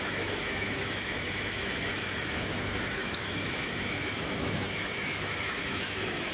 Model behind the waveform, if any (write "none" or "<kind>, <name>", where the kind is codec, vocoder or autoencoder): autoencoder, DAC-VAE